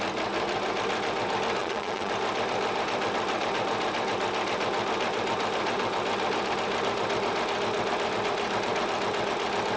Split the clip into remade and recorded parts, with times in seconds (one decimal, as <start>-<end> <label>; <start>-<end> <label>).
0.0-1.6 recorded; 1.6-2.1 remade; 2.1-9.8 recorded